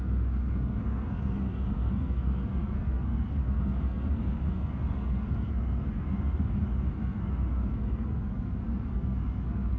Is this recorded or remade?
remade